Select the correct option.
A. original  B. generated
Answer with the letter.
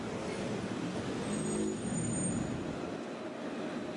A